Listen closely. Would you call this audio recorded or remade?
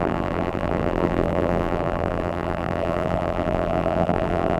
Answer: remade